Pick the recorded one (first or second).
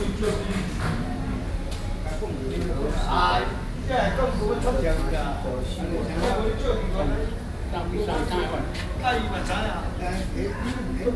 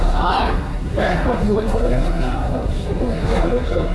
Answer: first